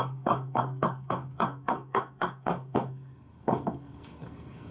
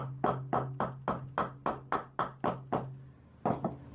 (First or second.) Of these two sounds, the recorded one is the second